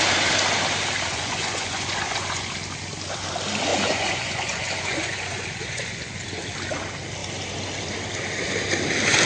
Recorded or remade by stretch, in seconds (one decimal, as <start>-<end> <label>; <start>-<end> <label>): 0.0-1.1 recorded; 1.1-2.5 remade; 2.5-3.7 recorded; 3.7-6.4 remade; 6.4-9.3 recorded